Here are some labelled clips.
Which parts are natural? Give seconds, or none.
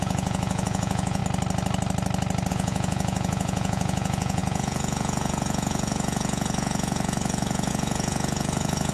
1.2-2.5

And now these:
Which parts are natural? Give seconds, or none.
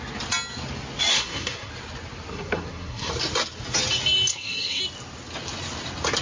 0.0-1.1; 1.7-2.3; 3.1-4.3; 4.8-6.2